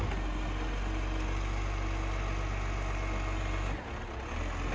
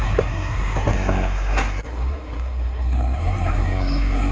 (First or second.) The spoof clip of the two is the second